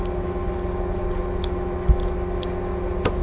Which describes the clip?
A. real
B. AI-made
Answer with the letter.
A